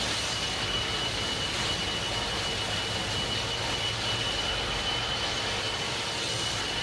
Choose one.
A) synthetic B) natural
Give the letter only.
B